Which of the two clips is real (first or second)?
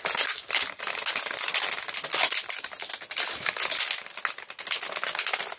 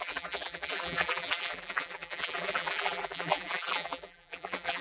first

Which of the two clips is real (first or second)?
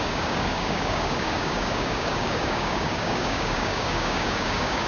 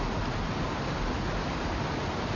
second